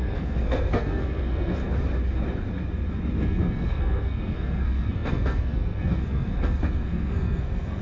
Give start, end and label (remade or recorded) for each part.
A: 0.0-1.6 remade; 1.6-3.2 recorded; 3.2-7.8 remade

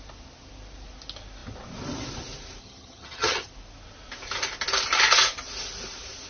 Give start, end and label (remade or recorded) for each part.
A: 0.0-2.6 recorded; 2.6-3.5 remade; 3.5-6.3 recorded

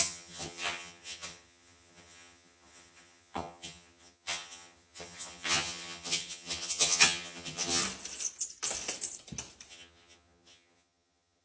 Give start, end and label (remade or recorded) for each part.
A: 0.0-7.8 remade; 7.8-9.7 recorded; 9.7-11.4 remade

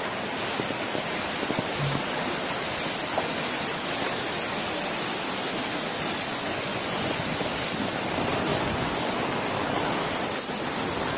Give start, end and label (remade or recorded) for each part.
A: 0.0-6.3 recorded; 6.3-7.2 remade; 7.2-8.5 recorded; 8.5-9.2 remade; 9.2-11.2 recorded

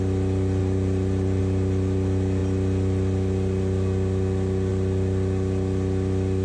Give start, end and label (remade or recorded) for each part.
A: 0.0-0.6 recorded; 0.6-1.4 remade; 1.4-6.4 recorded